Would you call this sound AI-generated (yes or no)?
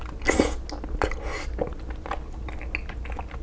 no